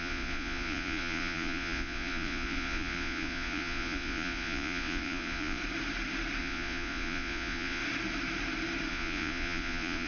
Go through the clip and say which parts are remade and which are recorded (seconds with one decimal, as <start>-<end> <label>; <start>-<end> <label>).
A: 0.0-5.6 remade; 5.6-6.4 recorded; 6.4-7.8 remade; 7.8-8.9 recorded; 8.9-10.1 remade